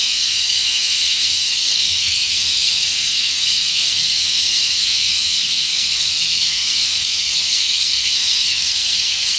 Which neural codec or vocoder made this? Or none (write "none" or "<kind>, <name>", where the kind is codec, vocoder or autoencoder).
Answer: codec, SNAC